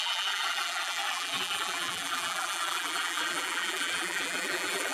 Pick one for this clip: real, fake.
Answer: fake